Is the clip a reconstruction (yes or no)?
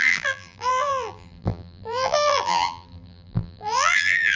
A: yes